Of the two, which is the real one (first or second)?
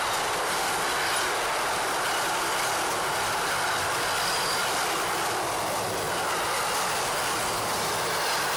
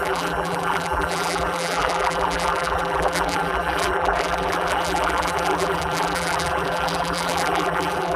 first